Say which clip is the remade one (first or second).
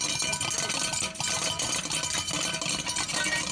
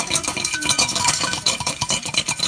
second